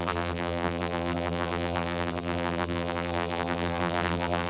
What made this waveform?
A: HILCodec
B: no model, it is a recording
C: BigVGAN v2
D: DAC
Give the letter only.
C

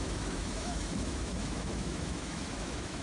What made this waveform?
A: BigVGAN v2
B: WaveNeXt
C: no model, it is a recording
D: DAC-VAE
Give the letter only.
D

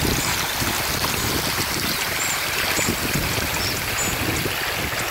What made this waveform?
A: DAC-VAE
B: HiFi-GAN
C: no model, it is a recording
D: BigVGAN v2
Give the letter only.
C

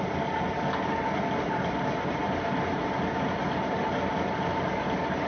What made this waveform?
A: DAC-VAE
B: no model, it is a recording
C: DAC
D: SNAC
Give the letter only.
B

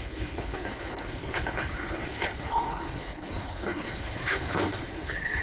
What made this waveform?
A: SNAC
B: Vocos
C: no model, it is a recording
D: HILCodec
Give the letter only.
D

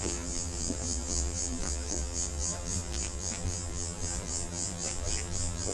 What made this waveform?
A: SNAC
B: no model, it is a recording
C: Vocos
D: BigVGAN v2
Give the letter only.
D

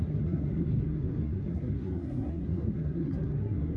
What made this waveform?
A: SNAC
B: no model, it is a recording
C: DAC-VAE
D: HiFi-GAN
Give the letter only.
A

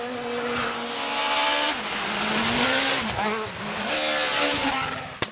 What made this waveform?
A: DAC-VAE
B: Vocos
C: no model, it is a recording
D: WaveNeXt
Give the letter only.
C